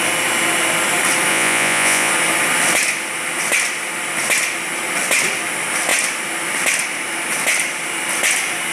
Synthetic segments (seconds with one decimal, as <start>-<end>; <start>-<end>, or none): 1.3-2.1